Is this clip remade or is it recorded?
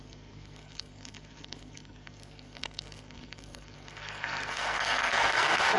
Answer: remade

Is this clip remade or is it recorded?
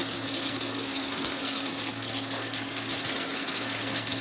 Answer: remade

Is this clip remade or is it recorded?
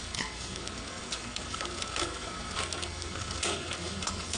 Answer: remade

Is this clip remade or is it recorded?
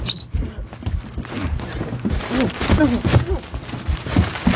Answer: recorded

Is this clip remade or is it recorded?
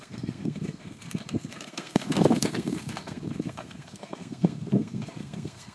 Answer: remade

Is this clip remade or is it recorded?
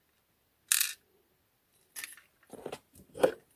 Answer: recorded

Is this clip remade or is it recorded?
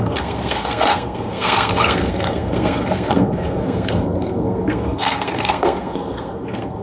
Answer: remade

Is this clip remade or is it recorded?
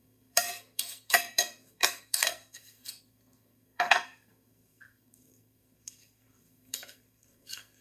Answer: remade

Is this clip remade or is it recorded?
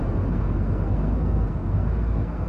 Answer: remade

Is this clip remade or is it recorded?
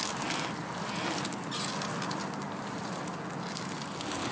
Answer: recorded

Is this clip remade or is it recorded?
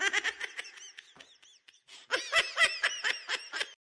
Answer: recorded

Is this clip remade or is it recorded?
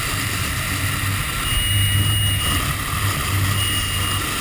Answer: recorded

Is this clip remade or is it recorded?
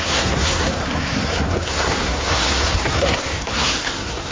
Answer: remade